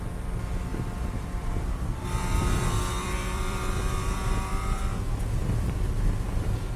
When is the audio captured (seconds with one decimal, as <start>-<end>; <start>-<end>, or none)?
0.0-0.7; 4.8-6.8